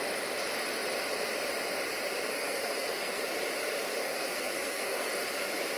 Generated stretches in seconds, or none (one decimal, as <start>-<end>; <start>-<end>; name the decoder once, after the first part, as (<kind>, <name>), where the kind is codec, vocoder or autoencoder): 2.3-3.2 (codec, SNAC); 4.0-5.1